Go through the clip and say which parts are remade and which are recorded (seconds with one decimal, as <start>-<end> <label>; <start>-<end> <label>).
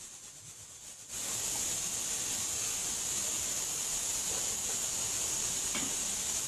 0.0-6.5 recorded